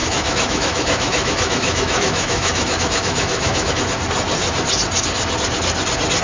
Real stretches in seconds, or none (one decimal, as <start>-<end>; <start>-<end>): 3.7-6.2